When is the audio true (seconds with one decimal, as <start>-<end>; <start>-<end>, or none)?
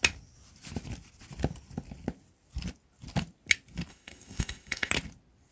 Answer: 0.0-3.9; 4.9-5.5